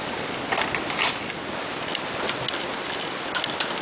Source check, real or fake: real